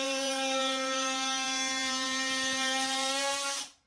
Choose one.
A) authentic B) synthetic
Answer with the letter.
B